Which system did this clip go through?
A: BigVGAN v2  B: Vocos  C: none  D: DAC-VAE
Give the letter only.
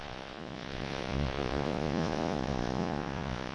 B